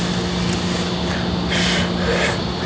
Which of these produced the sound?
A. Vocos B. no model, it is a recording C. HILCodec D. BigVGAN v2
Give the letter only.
B